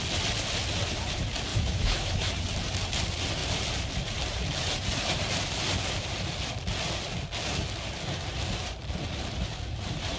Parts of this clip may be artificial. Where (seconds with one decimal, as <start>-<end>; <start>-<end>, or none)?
1.5-2.3

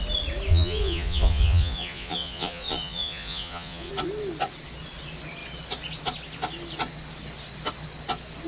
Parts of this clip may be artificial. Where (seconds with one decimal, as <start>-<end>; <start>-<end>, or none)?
0.5-3.9

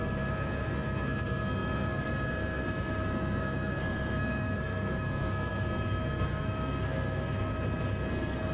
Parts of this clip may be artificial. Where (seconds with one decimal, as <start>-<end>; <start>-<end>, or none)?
0.0-7.5; 8.1-8.5

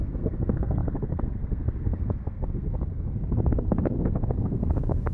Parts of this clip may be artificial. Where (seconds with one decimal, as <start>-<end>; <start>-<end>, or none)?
0.0-5.1